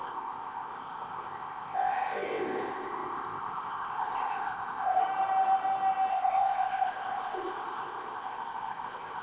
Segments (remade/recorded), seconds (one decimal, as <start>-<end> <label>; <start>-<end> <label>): 0.0-5.0 remade; 5.0-6.1 recorded; 6.1-9.2 remade